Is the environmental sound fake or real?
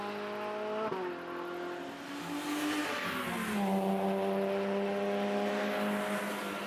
real